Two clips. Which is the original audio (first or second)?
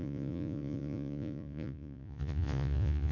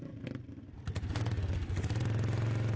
second